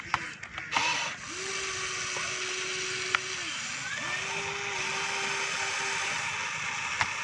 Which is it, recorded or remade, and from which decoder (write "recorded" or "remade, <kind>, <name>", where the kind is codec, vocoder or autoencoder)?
recorded